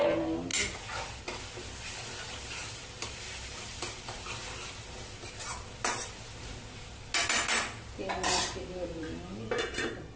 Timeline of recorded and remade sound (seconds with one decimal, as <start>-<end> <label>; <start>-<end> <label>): 0.0-10.2 recorded